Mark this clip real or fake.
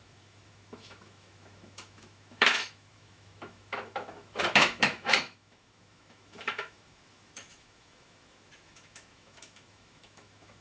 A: fake